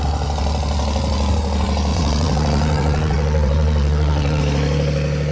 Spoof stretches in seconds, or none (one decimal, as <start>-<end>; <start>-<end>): 1.9-4.4